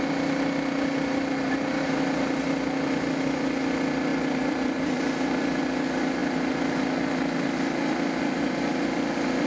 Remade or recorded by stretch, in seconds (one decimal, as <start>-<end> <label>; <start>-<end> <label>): 0.0-4.1 recorded; 4.1-5.6 remade; 5.6-9.5 recorded